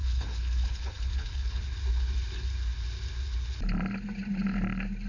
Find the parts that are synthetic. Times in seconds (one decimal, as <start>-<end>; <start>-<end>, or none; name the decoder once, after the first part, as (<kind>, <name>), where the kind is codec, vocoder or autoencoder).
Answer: 0.0-1.6 (codec, HILCodec)